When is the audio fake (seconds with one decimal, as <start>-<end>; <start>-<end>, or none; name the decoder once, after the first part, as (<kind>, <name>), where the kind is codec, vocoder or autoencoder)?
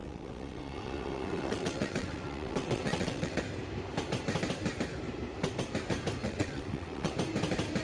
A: 0.0-3.4 (vocoder, WaveNeXt); 6.2-7.1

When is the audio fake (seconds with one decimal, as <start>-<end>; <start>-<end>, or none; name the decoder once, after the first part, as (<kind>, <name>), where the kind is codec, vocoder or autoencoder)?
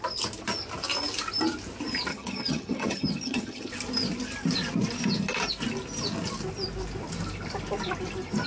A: 2.1-3.7 (vocoder, HiFi-GAN)